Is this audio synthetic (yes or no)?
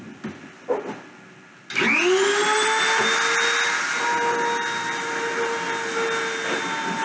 no